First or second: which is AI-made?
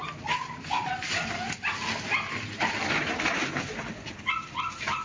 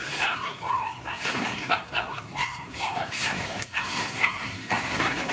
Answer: second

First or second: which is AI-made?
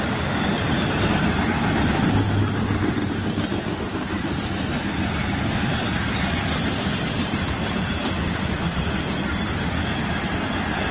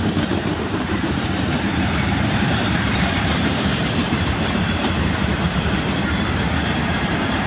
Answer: second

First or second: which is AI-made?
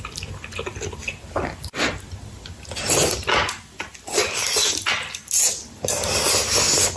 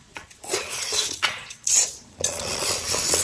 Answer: second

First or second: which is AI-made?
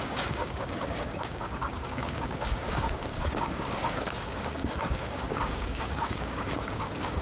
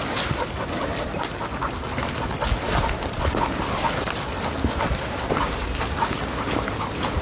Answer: first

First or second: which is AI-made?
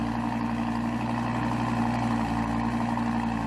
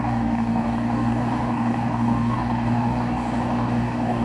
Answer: second